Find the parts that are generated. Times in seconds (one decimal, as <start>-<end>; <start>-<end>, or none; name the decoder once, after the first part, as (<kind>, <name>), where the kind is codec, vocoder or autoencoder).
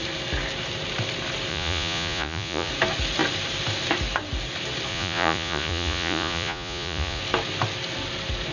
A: 1.5-2.7 (vocoder, Vocos); 4.9-7.2